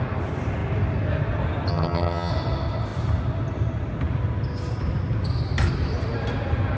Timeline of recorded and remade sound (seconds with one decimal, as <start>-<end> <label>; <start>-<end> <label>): 0.0-1.7 recorded; 1.7-2.3 remade; 2.3-6.8 recorded